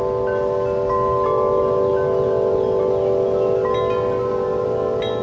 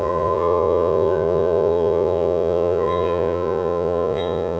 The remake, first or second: second